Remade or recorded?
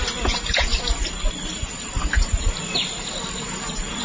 recorded